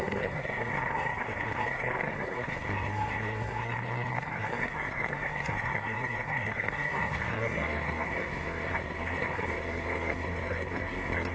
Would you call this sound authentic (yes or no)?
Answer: no